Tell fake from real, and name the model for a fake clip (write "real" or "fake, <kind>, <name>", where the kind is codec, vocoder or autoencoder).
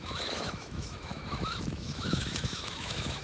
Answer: fake, autoencoder, DAC-VAE